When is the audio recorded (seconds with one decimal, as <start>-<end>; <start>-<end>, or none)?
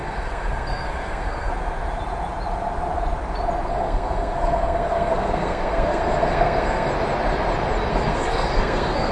1.5-3.7; 6.9-7.9